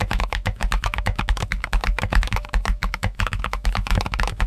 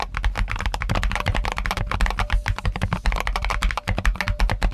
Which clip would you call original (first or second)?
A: second